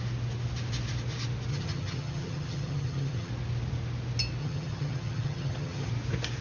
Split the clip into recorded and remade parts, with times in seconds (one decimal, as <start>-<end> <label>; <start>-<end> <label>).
0.0-1.5 recorded; 1.5-3.3 remade; 3.3-4.4 recorded; 4.4-5.9 remade; 5.9-6.4 recorded